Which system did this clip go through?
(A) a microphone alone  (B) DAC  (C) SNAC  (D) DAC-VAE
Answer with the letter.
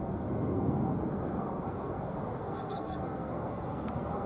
C